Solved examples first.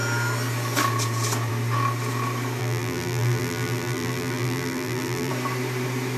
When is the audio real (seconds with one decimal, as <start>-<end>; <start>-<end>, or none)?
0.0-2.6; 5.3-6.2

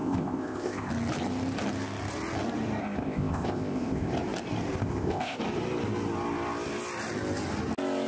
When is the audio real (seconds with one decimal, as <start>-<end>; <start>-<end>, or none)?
0.9-2.8; 4.1-4.8; 5.4-8.1

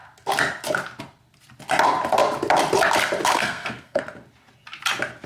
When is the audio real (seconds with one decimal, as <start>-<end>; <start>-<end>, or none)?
0.0-3.3; 4.0-5.3

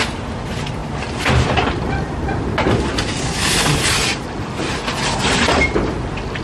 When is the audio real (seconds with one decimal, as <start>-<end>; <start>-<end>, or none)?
0.0-6.4

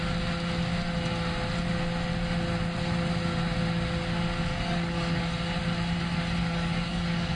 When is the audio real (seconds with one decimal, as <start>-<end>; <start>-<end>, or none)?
0.0-4.5; 5.2-6.4